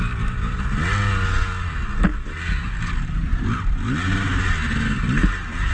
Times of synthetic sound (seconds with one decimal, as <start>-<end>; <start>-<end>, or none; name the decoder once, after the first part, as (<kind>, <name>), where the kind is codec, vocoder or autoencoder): none